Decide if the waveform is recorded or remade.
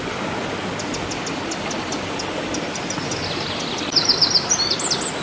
recorded